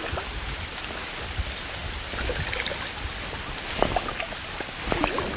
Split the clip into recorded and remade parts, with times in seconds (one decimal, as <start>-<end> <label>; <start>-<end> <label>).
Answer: 0.0-5.4 recorded